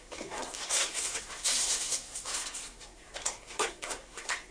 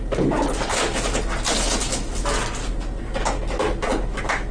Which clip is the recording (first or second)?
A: second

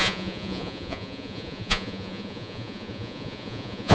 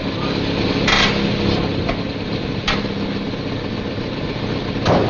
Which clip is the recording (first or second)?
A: second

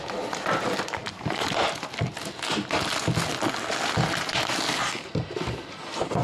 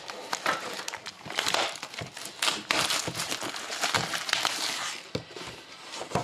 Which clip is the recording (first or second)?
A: first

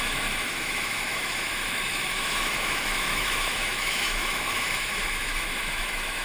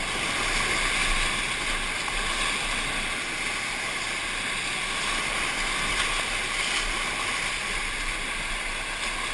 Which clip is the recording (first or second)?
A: second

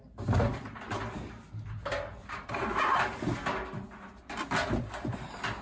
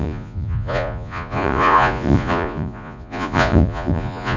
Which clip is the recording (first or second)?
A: first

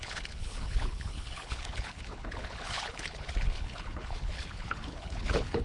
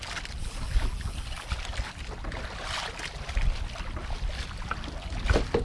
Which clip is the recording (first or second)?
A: second